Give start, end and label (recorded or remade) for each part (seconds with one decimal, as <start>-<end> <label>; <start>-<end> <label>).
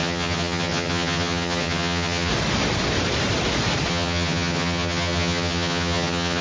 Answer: 0.0-2.3 remade; 2.3-3.9 recorded; 3.9-6.4 remade